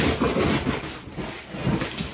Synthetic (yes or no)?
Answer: no